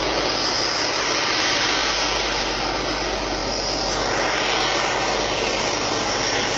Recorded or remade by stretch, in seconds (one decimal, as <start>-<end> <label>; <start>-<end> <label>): 0.0-6.6 recorded